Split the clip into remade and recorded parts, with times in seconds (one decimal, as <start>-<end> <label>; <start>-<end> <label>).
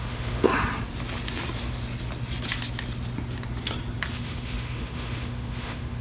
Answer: 0.0-0.5 remade; 0.5-4.1 recorded; 4.1-6.0 remade